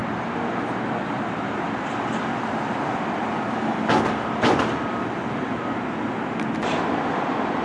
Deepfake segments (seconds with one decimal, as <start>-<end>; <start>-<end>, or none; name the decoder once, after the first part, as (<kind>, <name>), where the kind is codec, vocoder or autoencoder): none